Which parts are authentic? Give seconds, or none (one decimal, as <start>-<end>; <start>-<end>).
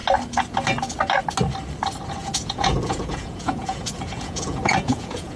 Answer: 0.0-2.2